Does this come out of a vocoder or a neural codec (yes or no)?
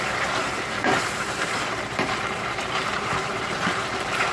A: yes